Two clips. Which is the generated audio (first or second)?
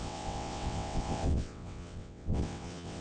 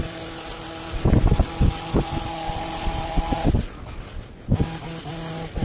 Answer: first